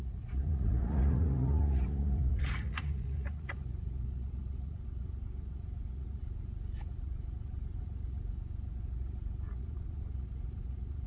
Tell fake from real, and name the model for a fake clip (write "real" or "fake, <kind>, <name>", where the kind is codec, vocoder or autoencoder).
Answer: fake, vocoder, Vocos